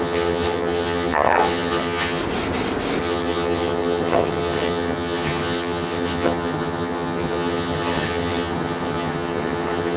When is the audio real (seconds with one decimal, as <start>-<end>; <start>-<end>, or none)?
2.2-3.0